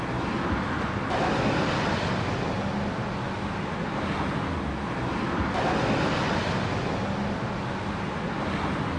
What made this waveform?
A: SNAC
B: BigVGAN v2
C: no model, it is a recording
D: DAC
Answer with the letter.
C